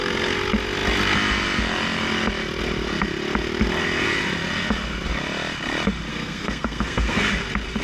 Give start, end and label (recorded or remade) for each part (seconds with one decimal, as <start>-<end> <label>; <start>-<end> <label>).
0.0-6.1 recorded; 6.1-7.3 remade; 7.3-7.8 recorded